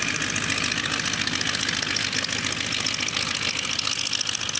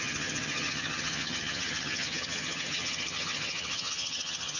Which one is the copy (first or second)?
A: second